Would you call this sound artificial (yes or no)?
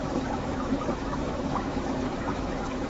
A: yes